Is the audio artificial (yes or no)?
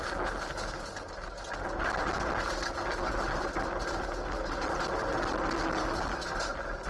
no